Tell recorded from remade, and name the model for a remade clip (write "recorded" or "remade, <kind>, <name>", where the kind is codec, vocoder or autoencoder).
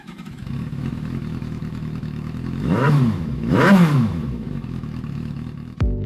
remade, autoencoder, DAC-VAE